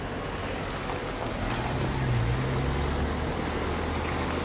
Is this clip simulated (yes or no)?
no